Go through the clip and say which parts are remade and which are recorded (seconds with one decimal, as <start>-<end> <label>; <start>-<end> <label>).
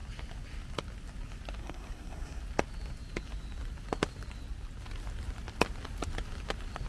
0.0-1.6 recorded; 1.6-2.4 remade; 2.4-6.9 recorded